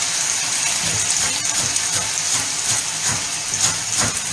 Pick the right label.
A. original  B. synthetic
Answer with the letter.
A